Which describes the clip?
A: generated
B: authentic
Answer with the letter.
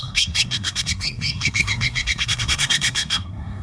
A